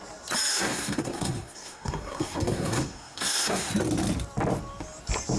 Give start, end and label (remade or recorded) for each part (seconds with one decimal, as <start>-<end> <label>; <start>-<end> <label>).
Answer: 0.0-0.5 recorded; 0.5-3.7 remade; 3.7-5.4 recorded